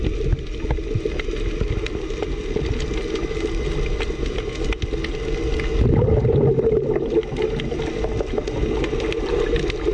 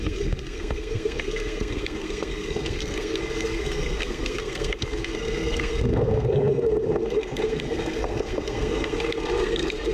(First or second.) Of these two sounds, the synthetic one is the second